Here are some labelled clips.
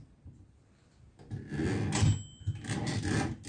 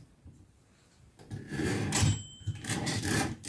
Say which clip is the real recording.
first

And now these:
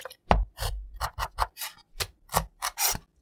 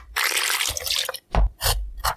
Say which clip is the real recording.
first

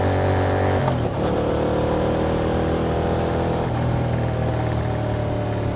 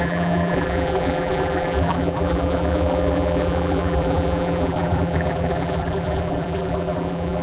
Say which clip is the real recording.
first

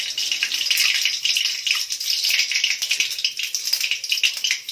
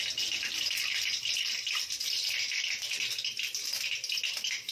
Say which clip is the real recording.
first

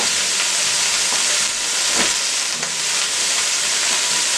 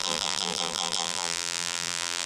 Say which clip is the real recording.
first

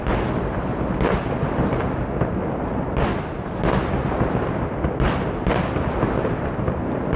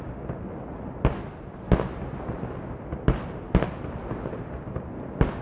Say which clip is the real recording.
second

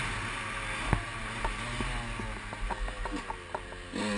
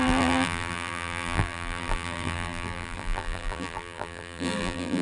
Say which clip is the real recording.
first